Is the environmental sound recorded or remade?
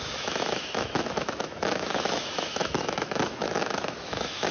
remade